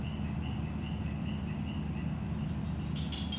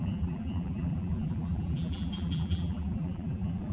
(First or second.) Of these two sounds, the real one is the first